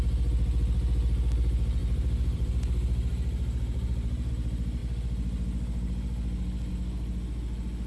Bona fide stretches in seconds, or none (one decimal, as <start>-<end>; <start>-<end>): 0.0-1.8; 4.3-7.9